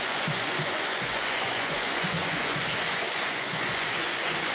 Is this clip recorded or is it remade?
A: remade